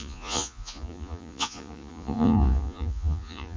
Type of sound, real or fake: fake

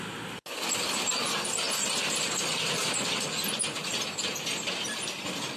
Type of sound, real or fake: real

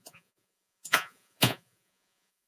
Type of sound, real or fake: fake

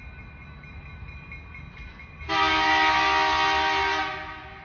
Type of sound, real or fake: real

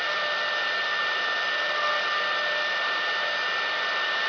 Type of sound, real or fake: real